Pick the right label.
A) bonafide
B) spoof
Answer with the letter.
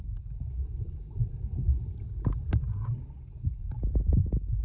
A